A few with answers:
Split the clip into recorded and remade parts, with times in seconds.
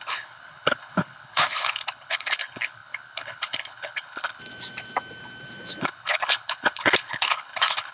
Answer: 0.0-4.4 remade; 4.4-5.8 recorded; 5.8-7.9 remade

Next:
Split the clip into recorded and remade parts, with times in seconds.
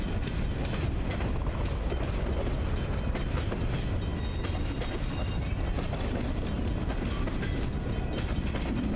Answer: 0.0-9.0 recorded